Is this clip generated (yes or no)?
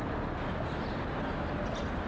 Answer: no